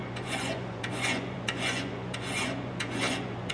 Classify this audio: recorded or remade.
remade